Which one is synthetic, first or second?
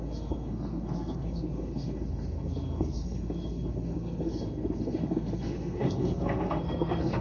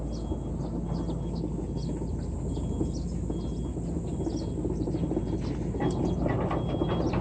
first